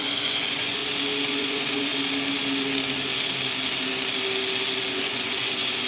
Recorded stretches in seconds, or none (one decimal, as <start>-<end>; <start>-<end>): 0.8-1.3; 1.9-4.9